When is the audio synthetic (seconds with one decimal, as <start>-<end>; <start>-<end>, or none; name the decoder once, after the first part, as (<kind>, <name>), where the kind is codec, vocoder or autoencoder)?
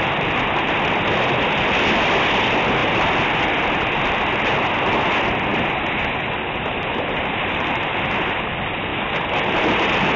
none